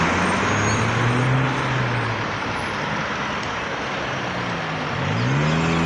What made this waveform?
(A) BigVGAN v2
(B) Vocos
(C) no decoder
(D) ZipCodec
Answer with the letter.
C